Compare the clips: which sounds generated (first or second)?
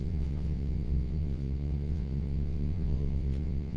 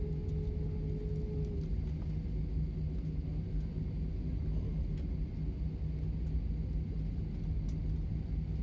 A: first